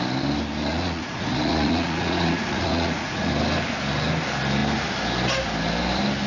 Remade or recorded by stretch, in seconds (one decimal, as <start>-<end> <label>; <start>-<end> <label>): 0.0-0.6 recorded; 0.6-3.3 remade; 3.3-6.3 recorded